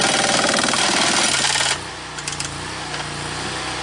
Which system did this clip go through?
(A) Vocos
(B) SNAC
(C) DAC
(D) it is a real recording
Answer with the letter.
D